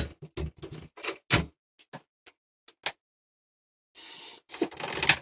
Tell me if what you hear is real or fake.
real